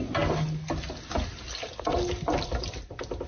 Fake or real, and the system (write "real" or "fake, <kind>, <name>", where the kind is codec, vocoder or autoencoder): real